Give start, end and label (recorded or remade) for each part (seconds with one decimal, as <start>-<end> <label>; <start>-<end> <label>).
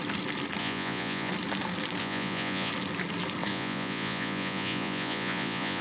0.0-0.6 recorded; 0.6-1.3 remade; 1.3-2.0 recorded; 2.0-2.7 remade; 2.7-3.5 recorded; 3.5-5.8 remade